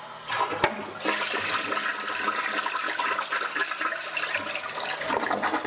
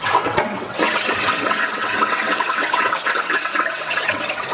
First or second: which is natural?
first